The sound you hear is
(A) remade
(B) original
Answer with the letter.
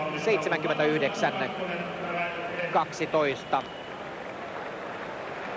B